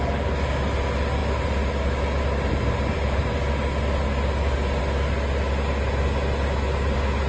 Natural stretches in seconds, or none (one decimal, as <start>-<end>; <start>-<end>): 0.0-7.3